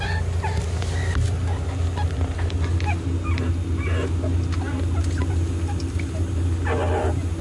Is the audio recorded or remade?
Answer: recorded